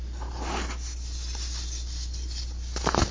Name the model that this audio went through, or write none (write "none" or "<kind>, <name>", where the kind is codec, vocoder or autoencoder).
none